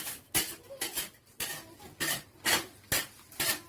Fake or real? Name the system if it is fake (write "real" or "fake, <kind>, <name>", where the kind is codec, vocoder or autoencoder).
real